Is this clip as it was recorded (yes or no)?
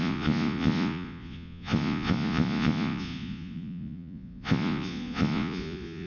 no